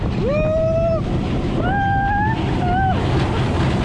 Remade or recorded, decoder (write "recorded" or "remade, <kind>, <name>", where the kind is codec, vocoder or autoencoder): recorded